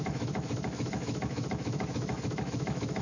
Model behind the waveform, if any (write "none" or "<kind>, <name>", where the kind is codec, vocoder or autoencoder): autoencoder, DAC-VAE